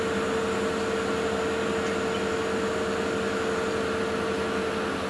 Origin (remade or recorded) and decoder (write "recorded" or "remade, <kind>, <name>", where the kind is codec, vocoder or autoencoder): recorded